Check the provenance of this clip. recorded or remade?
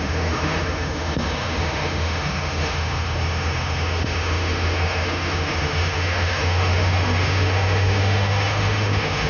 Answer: remade